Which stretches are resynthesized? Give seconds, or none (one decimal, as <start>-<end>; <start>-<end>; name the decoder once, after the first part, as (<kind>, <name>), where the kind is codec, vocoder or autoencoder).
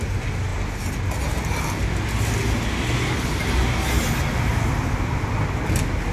none